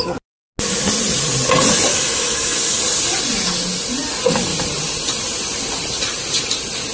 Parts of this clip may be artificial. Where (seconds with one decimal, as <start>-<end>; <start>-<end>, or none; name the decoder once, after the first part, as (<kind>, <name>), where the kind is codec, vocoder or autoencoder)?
1.9-2.8 (autoencoder, DAC-VAE)